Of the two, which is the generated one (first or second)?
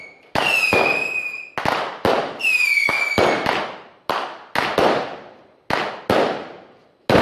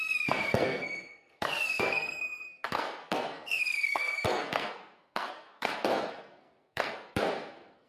second